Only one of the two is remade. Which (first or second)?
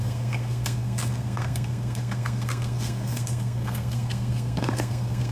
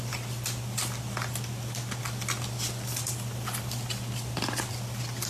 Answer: first